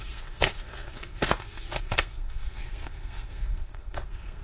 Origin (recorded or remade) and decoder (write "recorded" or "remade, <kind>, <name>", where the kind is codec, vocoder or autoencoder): remade, codec, SNAC